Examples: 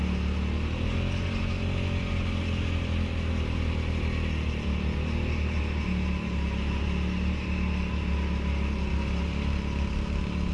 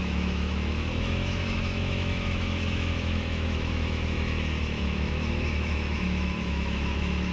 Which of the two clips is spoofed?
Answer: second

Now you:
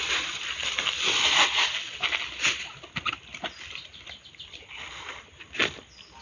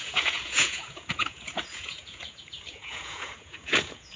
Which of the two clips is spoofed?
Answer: second